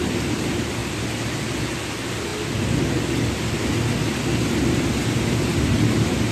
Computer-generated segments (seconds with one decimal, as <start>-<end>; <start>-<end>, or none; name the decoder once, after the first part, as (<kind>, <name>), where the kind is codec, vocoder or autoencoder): none